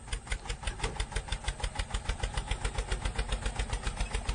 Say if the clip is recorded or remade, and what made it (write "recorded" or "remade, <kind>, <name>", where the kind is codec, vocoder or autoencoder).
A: recorded